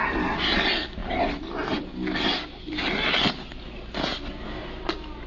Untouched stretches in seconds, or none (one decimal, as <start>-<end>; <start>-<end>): 0.0-5.3